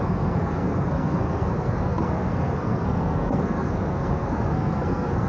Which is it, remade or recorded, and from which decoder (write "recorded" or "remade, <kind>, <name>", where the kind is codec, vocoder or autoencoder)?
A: remade, codec, SNAC